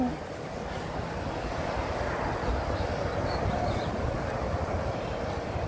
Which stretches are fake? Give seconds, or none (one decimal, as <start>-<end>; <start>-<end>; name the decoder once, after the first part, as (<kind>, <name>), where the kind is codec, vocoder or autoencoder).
0.0-0.6 (vocoder, BigVGAN v2); 4.0-5.7